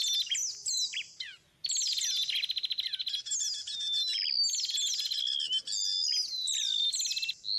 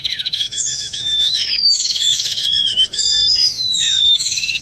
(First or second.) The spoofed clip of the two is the second